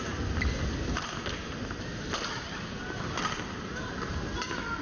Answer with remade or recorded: recorded